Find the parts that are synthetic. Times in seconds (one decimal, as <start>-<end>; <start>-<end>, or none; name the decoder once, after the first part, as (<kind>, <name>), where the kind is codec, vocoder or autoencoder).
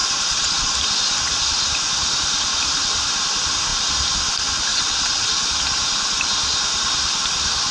0.0-0.7 (vocoder, Vocos); 4.7-5.5